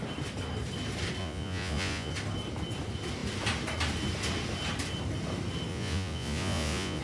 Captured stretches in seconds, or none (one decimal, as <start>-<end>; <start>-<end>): 0.0-1.2; 2.1-5.7